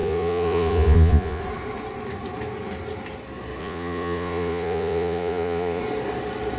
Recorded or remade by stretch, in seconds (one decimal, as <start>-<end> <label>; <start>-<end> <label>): 0.0-1.4 remade; 1.4-3.6 recorded; 3.6-5.8 remade; 5.8-6.6 recorded